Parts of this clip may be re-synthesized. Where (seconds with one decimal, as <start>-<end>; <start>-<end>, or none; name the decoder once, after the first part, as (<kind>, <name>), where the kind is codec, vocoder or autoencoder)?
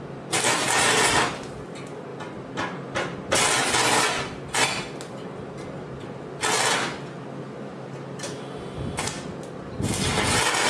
2.1-3.3 (vocoder, BigVGAN v2)